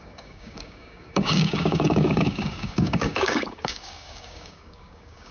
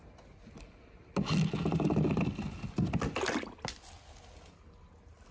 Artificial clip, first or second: first